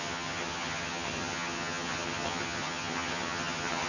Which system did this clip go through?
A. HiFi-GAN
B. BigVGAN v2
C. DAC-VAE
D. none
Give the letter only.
A